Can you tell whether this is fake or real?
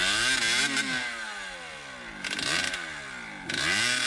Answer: real